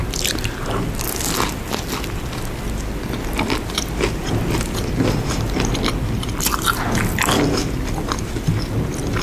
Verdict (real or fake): real